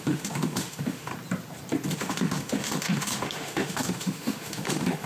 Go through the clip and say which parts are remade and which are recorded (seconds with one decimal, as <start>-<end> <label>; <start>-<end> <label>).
0.0-1.1 remade; 1.1-1.9 recorded; 1.9-5.1 remade